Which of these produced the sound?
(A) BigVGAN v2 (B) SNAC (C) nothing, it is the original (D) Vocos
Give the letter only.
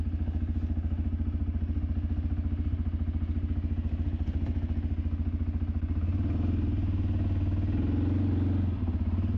C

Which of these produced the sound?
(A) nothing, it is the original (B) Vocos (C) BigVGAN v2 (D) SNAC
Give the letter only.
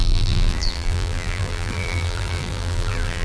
C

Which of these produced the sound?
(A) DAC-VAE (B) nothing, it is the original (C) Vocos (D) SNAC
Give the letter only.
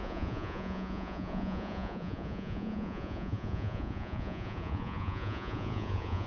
C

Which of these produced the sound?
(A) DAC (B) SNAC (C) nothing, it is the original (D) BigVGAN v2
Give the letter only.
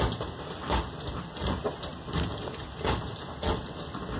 C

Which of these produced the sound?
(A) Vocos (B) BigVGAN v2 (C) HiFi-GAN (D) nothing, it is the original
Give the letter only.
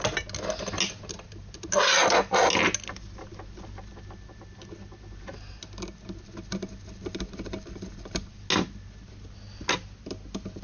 D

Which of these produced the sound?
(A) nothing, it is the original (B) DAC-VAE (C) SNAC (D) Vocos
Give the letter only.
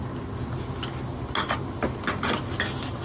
A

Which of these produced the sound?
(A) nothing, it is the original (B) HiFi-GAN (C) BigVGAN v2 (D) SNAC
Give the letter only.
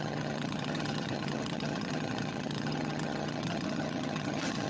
B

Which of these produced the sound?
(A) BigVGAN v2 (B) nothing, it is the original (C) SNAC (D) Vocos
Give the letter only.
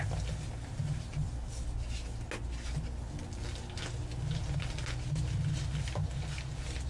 B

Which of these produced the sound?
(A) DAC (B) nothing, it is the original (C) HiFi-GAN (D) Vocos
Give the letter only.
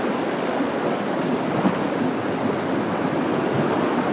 B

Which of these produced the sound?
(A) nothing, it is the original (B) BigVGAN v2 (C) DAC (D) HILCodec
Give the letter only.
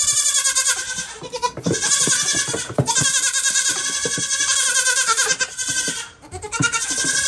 B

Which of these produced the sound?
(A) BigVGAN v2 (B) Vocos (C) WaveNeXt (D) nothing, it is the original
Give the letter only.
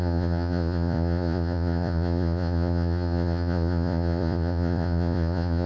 B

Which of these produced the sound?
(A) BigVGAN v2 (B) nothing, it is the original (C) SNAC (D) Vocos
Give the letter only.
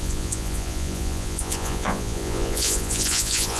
D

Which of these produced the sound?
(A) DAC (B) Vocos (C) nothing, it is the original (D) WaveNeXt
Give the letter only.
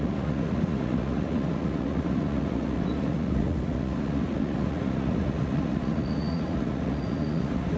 B